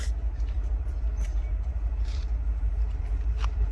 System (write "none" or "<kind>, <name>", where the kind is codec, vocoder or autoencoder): vocoder, BigVGAN v2